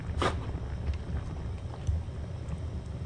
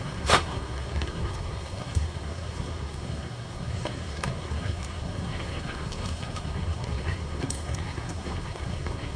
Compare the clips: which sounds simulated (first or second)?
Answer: second